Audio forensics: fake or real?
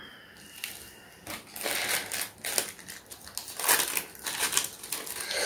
real